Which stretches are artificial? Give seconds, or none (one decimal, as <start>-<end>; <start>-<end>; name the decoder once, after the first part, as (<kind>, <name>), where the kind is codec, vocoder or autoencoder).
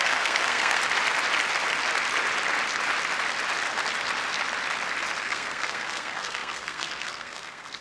0.0-0.8 (codec, SNAC); 5.2-7.8